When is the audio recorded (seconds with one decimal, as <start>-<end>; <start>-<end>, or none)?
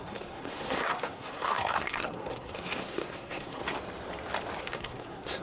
3.6-4.6